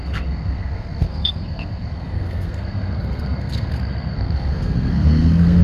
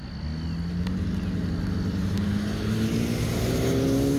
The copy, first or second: first